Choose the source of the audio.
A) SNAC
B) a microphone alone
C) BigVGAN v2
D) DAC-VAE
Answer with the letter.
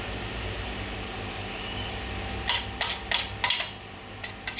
B